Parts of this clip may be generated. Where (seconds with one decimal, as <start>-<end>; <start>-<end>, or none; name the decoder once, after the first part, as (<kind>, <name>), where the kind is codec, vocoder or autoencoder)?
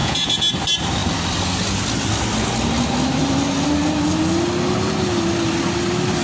0.0-0.5 (vocoder, Vocos)